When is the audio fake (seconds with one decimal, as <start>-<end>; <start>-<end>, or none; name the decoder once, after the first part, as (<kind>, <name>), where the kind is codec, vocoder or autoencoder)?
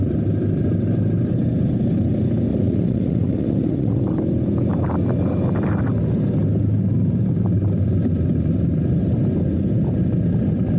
2.5-4.0 (vocoder, Vocos)